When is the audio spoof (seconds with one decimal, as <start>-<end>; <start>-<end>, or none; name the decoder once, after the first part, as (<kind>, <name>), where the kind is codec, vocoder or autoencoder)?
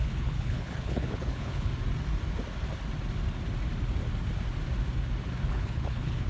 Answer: 0.0-1.7 (codec, HILCodec); 5.5-6.3